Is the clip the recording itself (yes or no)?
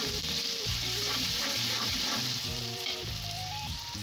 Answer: no